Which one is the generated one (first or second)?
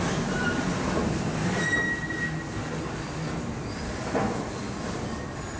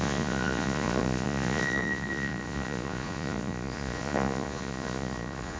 second